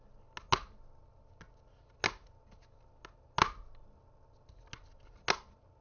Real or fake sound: real